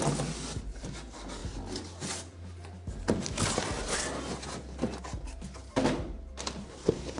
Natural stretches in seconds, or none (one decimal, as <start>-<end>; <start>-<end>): 0.0-6.6